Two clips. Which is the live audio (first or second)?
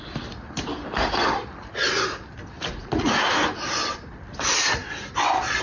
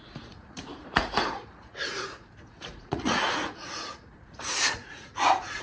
first